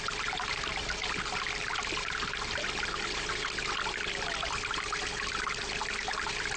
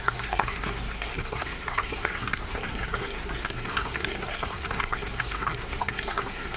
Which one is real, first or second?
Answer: first